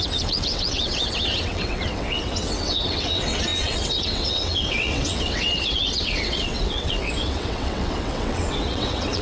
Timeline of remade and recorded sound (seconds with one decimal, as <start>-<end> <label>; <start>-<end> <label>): 0.0-9.2 remade